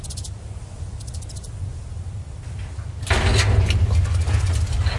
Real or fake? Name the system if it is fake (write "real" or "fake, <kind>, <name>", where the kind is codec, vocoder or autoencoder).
real